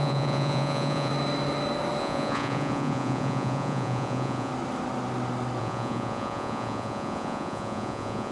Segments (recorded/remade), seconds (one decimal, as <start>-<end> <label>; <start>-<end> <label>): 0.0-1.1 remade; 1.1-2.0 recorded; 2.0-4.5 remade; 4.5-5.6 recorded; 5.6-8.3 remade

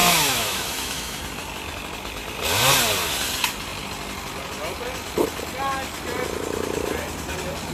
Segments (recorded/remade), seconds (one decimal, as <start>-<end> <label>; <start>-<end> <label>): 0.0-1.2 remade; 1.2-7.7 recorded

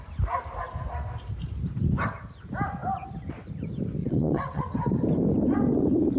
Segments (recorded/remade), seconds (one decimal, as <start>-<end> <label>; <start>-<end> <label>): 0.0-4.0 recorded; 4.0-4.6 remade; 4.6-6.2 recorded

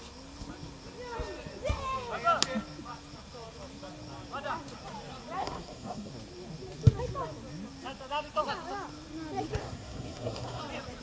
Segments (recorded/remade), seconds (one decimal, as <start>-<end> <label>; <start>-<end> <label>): 0.0-5.4 recorded; 5.4-6.1 remade; 6.1-9.6 recorded; 9.6-10.6 remade; 10.6-11.0 recorded

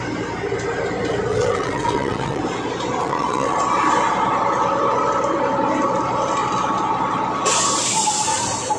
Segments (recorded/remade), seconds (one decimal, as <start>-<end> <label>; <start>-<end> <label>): 0.0-1.3 recorded; 1.3-2.4 remade; 2.4-3.0 recorded; 3.0-3.6 remade; 3.6-8.8 recorded